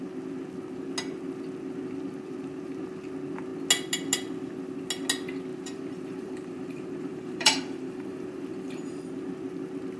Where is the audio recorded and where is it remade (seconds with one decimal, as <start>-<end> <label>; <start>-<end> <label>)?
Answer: 0.0-5.5 recorded; 5.5-9.0 remade; 9.0-10.0 recorded